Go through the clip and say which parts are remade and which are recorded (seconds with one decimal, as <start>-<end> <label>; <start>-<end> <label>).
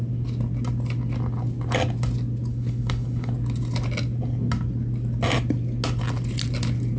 0.0-2.5 recorded; 2.5-3.3 remade; 3.3-7.0 recorded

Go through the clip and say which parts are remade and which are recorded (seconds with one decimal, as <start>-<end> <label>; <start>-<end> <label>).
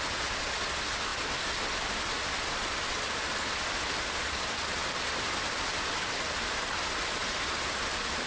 0.0-8.3 recorded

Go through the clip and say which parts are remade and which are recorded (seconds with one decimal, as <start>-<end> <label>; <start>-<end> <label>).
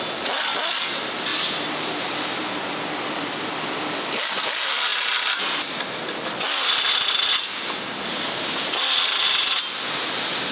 0.0-10.5 recorded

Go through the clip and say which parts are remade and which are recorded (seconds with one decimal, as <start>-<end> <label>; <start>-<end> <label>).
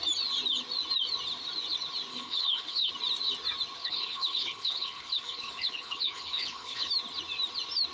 0.0-2.1 recorded; 2.1-2.9 remade; 2.9-3.8 recorded; 3.8-6.9 remade; 6.9-7.9 recorded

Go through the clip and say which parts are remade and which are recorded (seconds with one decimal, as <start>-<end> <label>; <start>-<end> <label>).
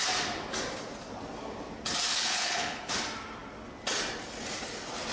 0.0-2.1 recorded; 2.1-2.9 remade; 2.9-5.1 recorded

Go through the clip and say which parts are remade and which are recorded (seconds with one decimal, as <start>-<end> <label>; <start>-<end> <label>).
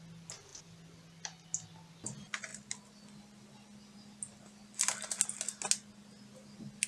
0.0-6.9 recorded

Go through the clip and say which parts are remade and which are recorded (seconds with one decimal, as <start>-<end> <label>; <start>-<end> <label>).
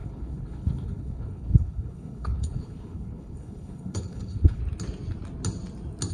0.0-4.6 remade; 4.6-6.1 recorded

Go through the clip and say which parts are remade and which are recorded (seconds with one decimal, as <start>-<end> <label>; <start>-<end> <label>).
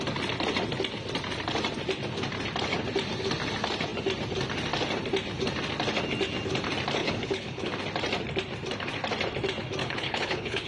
0.0-7.0 recorded; 7.0-7.7 remade; 7.7-9.8 recorded; 9.8-10.7 remade